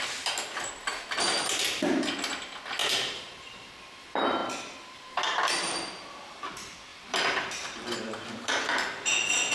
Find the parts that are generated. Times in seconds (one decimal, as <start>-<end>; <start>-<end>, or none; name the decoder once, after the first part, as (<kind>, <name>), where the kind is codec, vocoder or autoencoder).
2.8-3.7 (vocoder, BigVGAN v2); 4.4-5.4; 6.9-9.1